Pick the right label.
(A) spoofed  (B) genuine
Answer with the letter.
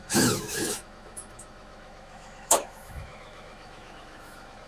A